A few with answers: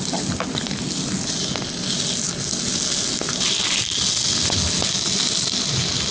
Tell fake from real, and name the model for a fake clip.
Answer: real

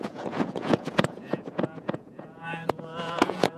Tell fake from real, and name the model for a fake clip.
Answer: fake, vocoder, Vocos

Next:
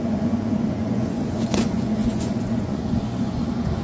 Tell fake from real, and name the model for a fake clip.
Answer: fake, vocoder, Vocos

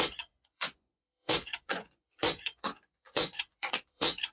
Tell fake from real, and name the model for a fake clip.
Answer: fake, vocoder, Vocos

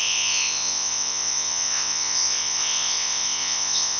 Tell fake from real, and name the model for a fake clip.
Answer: fake, vocoder, Vocos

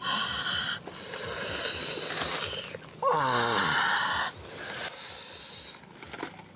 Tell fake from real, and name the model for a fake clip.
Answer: real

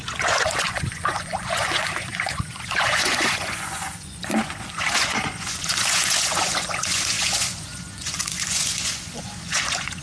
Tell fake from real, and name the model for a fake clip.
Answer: fake, vocoder, Vocos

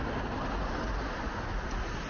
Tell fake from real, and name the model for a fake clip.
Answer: real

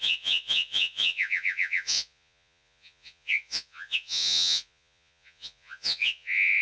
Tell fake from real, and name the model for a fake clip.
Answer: fake, vocoder, Vocos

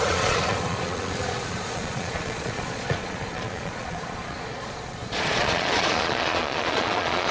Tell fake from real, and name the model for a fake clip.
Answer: fake, vocoder, Vocos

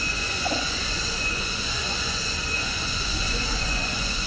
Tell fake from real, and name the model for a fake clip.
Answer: fake, vocoder, Vocos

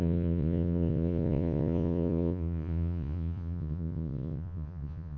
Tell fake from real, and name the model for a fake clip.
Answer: fake, vocoder, Vocos